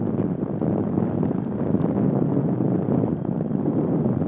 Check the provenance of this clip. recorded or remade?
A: recorded